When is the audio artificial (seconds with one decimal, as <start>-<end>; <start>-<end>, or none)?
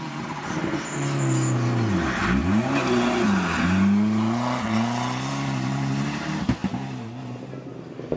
none